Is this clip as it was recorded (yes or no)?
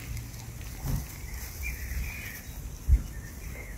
yes